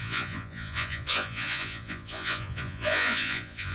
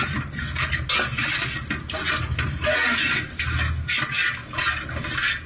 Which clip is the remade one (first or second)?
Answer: first